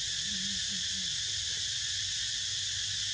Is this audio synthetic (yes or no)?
no